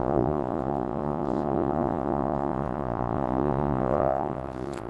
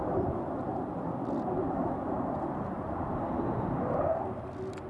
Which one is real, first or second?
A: second